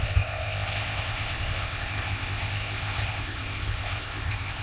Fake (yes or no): yes